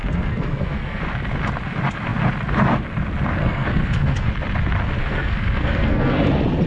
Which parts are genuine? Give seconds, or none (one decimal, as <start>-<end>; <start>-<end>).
1.0-3.4; 4.3-5.0; 6.2-6.7